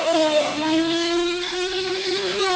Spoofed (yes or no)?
yes